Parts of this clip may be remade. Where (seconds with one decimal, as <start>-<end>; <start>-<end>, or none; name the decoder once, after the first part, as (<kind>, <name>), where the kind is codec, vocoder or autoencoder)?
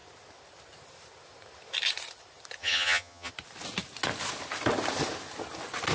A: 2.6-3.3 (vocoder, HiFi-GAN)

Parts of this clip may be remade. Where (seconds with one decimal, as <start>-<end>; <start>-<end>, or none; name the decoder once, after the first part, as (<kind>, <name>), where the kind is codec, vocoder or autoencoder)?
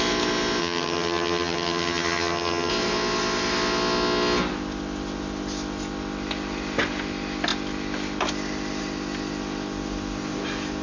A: 0.6-2.7 (vocoder, HiFi-GAN)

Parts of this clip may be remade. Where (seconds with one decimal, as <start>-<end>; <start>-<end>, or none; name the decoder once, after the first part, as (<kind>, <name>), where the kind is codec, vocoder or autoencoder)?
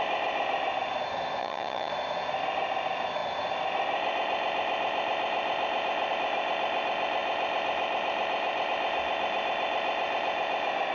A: 1.4-1.9 (vocoder, HiFi-GAN)